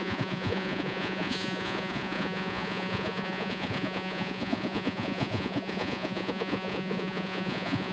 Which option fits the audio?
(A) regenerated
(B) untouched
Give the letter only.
A